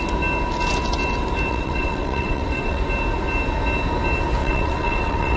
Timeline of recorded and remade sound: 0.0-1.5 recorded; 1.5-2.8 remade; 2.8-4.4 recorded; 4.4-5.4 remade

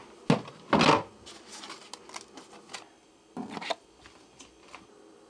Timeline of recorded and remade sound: 0.0-5.3 recorded